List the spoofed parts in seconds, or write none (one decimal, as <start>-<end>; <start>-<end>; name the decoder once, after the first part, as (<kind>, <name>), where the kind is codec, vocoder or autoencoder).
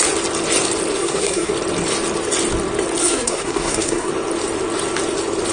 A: 1.0-1.5 (codec, SNAC); 3.0-4.1